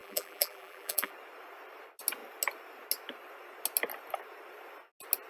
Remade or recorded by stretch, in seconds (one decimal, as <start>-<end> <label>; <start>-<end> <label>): 0.0-1.1 remade; 1.1-5.3 recorded